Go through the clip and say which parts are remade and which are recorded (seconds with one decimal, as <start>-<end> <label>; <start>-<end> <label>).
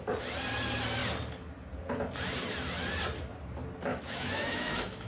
0.0-3.9 recorded; 3.9-5.1 remade